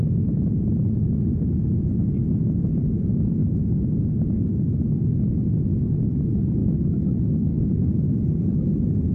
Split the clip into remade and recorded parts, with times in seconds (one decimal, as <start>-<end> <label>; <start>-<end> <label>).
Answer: 0.0-3.4 recorded; 3.4-4.0 remade; 4.0-6.6 recorded; 6.6-7.5 remade; 7.5-9.1 recorded